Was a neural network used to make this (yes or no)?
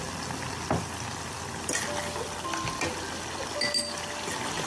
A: no